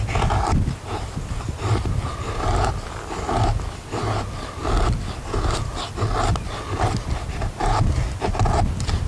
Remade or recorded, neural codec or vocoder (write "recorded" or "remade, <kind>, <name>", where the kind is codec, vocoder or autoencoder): recorded